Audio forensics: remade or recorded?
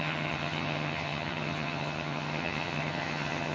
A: remade